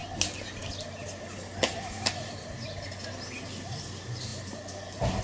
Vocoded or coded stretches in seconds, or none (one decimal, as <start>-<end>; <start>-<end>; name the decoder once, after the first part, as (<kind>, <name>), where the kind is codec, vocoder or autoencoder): none